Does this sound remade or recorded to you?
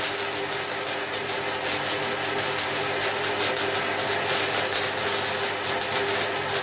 recorded